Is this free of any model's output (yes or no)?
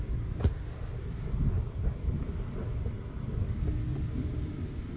yes